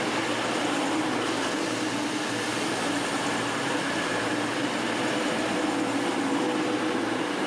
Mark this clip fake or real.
real